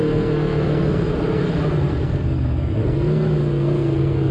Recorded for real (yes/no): no